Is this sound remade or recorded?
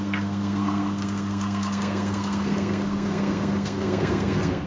remade